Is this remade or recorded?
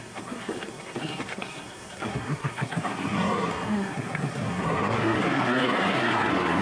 remade